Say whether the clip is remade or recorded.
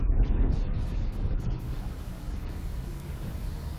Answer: remade